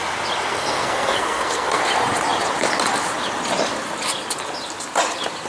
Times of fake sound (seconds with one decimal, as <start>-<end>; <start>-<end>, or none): 0.5-1.8